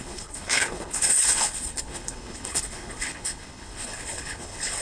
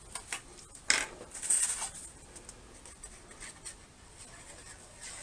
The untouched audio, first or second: second